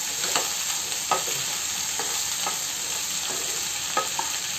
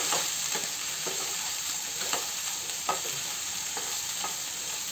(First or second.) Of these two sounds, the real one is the first